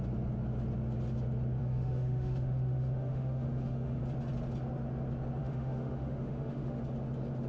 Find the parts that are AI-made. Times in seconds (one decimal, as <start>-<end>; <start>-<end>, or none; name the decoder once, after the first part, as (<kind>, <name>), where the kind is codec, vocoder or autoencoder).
1.6-4.0 (autoencoder, DAC-VAE); 5.4-6.8